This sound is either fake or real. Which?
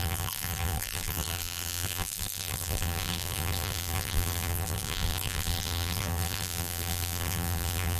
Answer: fake